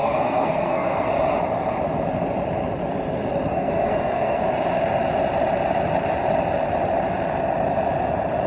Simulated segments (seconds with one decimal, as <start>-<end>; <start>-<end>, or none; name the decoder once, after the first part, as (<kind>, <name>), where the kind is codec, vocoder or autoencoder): 0.0-1.1 (codec, SNAC); 3.5-4.4